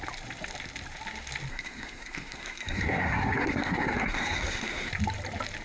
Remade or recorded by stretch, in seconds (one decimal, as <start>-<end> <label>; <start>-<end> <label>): 0.0-1.5 recorded; 1.5-4.9 remade; 4.9-5.6 recorded